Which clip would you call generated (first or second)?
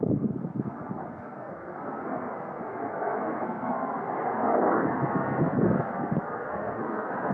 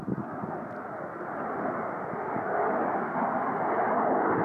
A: first